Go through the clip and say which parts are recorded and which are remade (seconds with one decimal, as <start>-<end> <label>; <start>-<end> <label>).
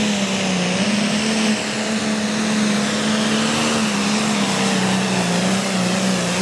0.0-6.4 recorded